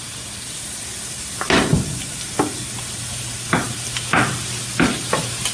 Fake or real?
real